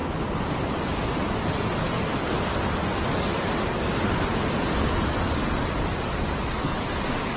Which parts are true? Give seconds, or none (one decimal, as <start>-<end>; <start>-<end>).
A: 0.0-7.4